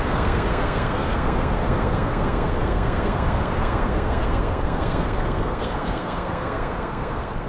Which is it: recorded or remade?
remade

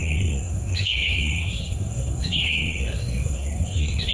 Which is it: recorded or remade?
remade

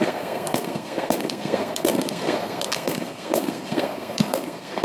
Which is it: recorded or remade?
remade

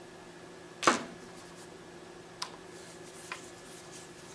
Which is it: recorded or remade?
recorded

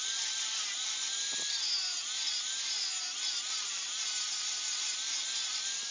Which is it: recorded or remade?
recorded